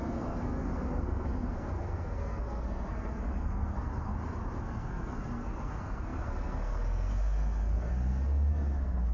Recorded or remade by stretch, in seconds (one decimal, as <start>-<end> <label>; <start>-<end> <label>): 0.0-4.1 remade; 4.1-4.6 recorded; 4.6-9.1 remade